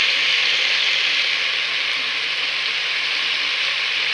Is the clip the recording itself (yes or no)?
yes